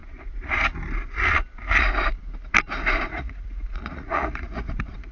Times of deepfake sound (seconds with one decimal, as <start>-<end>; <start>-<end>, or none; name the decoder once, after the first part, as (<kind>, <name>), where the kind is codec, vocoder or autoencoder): 3.1-5.1 (vocoder, Vocos)